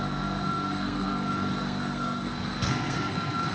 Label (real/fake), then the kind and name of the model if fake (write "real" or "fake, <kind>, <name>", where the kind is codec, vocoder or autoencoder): fake, codec, SNAC